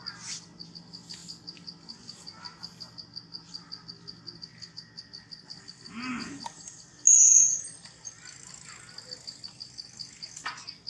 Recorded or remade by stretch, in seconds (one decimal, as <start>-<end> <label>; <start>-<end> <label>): 0.0-10.9 recorded